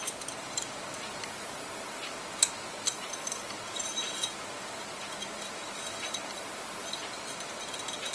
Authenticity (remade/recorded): remade